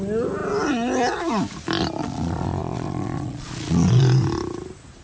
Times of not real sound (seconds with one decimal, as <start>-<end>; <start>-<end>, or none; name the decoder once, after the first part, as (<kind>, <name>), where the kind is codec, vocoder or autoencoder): 2.0-4.0 (vocoder, Vocos)